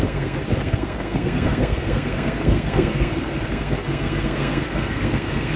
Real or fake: fake